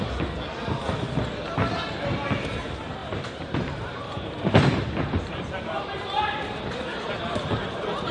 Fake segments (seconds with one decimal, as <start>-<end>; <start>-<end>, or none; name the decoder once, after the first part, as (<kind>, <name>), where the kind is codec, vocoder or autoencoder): 3.0-8.1 (vocoder, BigVGAN v2)